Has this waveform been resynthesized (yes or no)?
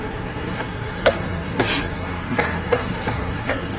yes